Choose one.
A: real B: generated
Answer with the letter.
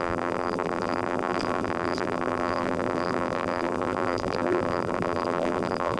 B